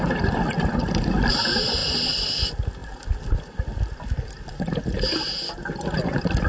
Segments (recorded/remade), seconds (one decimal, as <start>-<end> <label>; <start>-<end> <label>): 0.0-6.5 recorded